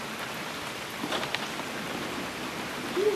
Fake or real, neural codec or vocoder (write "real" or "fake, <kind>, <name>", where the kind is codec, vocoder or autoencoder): real